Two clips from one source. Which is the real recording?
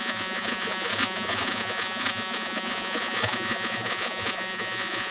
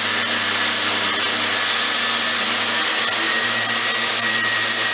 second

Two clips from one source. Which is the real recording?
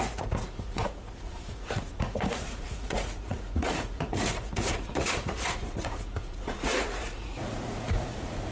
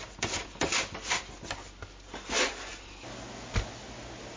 second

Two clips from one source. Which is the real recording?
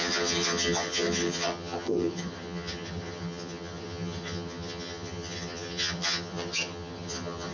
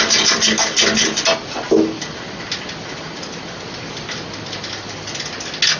second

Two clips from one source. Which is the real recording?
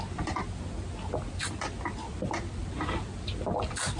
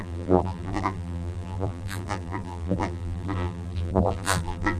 first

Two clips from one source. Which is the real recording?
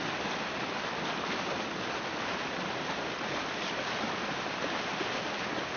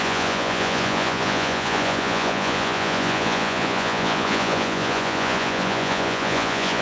first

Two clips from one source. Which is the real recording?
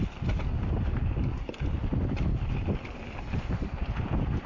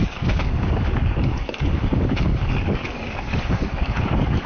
first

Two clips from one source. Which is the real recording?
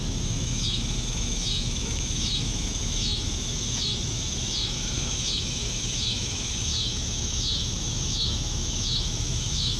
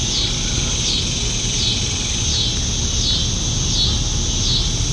second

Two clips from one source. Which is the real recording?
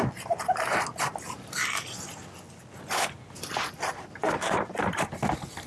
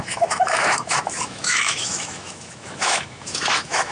first